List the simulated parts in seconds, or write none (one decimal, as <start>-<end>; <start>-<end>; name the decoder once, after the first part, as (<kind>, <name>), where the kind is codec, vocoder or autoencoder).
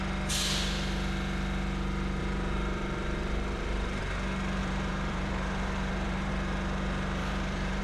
2.2-4.0 (vocoder, BigVGAN v2); 4.6-6.3; 7.2-7.8